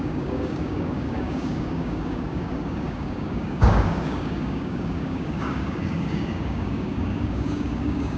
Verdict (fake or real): fake